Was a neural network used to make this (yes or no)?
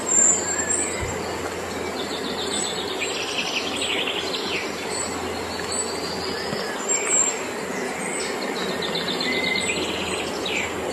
no